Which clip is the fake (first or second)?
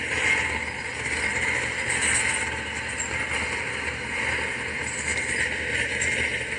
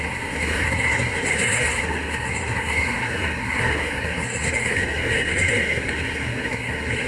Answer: second